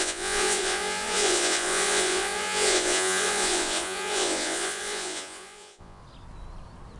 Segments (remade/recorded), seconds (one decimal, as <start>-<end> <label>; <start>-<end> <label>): 0.0-6.0 remade; 6.0-7.0 recorded